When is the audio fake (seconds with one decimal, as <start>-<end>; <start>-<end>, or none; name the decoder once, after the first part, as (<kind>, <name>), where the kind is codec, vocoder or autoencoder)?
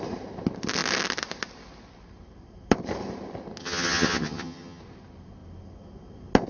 3.6-4.8 (vocoder, HiFi-GAN)